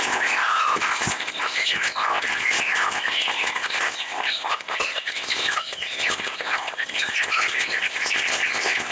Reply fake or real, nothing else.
fake